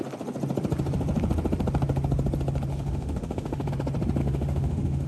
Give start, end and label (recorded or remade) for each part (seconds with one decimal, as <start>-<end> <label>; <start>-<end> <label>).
0.0-2.7 recorded; 2.7-3.7 remade; 3.7-4.2 recorded; 4.2-5.1 remade